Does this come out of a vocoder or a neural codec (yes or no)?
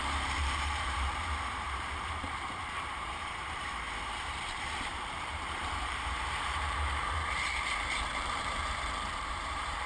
yes